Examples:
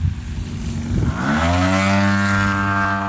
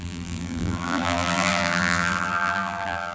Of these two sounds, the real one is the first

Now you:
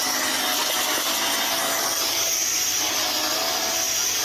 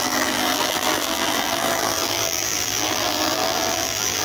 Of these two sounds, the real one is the first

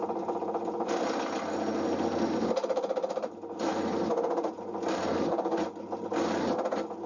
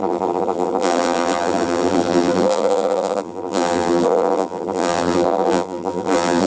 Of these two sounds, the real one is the first